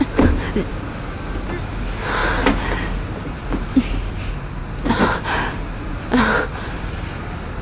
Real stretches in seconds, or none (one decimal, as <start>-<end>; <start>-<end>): 0.0-7.6